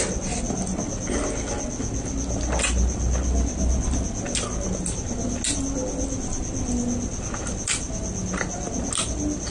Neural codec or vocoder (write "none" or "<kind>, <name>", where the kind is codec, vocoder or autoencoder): none